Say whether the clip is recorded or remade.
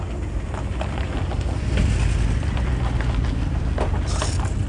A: recorded